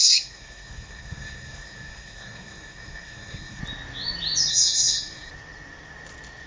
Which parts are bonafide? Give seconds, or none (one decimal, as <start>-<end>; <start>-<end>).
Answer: 3.6-4.5; 5.3-6.5